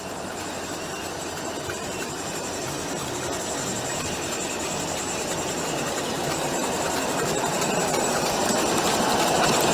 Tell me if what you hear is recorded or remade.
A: recorded